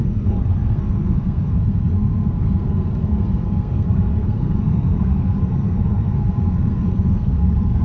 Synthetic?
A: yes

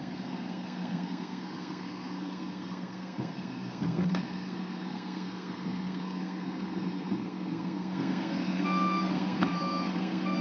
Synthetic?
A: yes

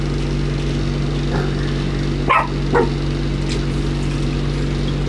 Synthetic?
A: no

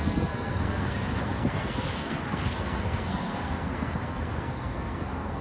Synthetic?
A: yes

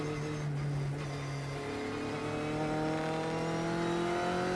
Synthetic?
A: no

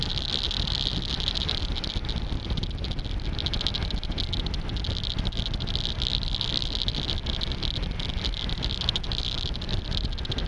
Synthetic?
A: no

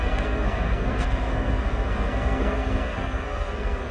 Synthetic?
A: yes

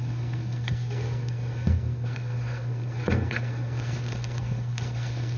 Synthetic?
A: yes